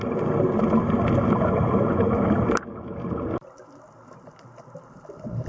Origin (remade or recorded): recorded